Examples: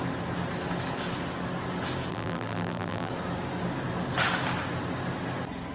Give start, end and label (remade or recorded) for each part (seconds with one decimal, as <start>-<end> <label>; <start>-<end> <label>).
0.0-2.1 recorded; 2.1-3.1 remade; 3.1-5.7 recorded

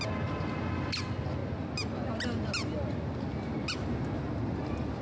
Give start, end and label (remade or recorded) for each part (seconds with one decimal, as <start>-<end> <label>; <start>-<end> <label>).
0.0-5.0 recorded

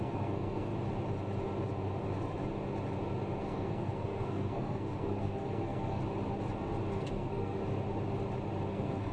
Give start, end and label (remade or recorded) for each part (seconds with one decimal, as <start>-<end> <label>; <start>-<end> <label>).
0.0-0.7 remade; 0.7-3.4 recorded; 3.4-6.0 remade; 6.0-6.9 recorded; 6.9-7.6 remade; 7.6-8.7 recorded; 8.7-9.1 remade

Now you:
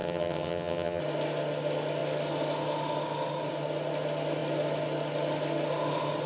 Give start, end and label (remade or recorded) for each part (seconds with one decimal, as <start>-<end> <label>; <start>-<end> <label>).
0.0-1.0 remade; 1.0-6.3 recorded

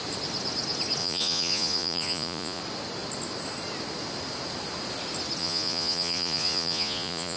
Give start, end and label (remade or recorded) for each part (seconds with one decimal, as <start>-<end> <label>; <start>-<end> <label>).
0.0-1.0 recorded; 1.0-2.6 remade; 2.6-5.4 recorded; 5.4-7.4 remade